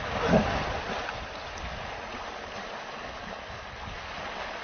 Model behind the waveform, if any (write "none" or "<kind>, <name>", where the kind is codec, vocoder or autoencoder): none